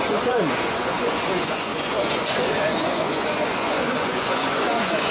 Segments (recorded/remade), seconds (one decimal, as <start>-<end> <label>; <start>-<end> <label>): 0.0-5.1 remade